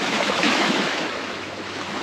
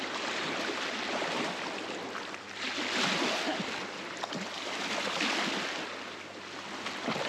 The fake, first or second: first